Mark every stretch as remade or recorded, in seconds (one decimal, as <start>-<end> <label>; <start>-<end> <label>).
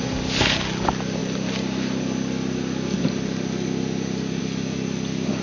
0.0-5.4 recorded